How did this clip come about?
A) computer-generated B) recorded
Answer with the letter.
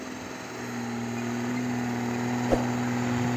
B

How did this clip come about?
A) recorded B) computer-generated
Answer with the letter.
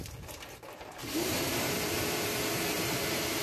B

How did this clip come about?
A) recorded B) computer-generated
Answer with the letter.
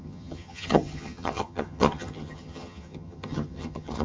B